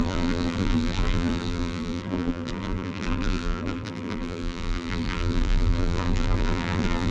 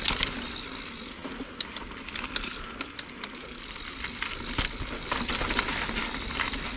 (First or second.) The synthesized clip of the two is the first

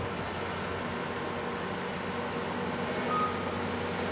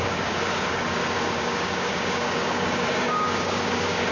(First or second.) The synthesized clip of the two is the second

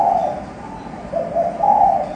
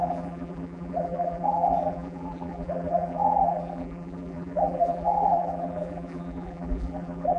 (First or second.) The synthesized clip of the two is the second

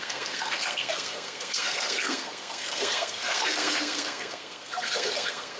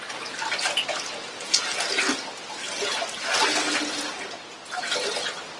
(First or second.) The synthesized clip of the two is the first